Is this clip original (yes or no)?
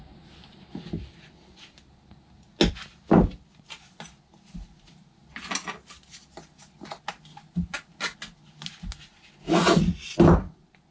yes